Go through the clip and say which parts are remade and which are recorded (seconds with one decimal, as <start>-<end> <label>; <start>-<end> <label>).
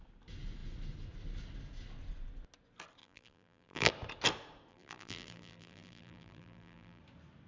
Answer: 0.0-3.0 recorded; 3.0-3.9 remade; 3.9-4.7 recorded; 4.7-7.0 remade; 7.0-7.5 recorded